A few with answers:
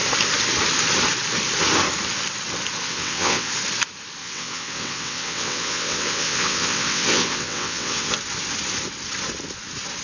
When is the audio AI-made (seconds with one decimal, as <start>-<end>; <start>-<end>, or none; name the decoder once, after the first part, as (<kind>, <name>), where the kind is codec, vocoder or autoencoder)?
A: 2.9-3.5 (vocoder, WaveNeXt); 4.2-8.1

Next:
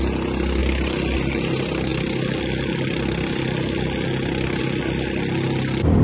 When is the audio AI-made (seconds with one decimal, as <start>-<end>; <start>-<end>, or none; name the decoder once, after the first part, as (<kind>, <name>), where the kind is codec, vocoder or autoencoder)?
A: none

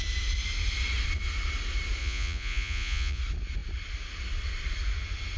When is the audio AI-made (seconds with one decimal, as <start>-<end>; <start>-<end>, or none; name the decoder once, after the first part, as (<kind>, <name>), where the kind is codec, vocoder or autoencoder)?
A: 2.0-3.2 (vocoder, Vocos)

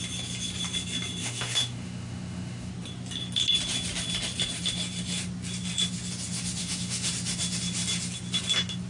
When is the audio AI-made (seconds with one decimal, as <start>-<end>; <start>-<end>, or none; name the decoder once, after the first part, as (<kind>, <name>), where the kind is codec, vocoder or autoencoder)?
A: 1.2-2.7 (autoencoder, DAC-VAE); 6.6-7.1

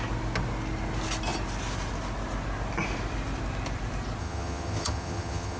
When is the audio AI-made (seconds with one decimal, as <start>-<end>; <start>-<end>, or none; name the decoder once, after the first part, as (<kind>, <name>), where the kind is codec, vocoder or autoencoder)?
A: 4.2-5.6 (vocoder, HiFi-GAN)

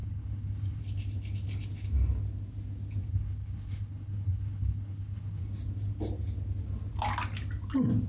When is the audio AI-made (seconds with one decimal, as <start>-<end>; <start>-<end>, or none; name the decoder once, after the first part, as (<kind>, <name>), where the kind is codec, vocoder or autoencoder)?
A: 0.0-0.8 (codec, HILCodec); 3.1-5.4

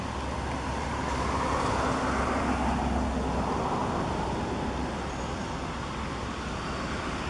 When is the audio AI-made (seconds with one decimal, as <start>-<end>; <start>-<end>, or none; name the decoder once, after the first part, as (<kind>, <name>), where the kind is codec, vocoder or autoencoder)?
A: none

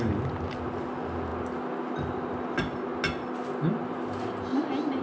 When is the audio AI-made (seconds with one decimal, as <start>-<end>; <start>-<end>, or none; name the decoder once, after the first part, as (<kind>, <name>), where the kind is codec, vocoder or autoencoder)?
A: none